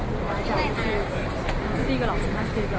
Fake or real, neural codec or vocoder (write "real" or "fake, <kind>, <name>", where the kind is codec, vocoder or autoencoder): real